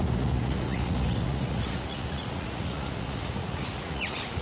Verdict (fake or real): fake